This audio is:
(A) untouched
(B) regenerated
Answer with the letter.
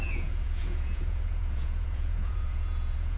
B